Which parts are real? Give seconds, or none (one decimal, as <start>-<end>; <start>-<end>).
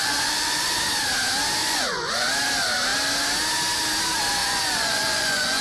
0.8-1.6; 2.3-4.4